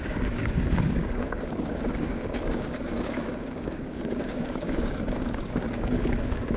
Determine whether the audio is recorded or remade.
remade